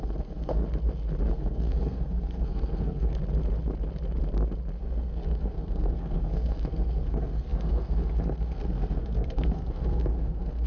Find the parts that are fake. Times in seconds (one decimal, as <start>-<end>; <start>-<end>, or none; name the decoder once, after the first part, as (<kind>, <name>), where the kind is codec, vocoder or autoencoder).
0.0-0.6 (codec, SNAC); 1.3-3.1; 4.8-10.7